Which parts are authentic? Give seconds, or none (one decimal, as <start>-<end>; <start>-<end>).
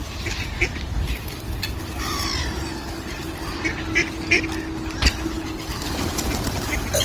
0.0-7.0